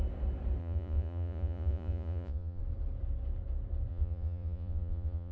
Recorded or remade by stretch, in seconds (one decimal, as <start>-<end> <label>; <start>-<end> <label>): 0.0-0.6 recorded; 0.6-2.6 remade; 2.6-3.9 recorded; 3.9-5.3 remade